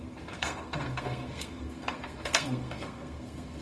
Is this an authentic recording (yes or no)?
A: no